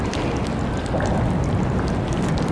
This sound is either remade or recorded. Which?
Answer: recorded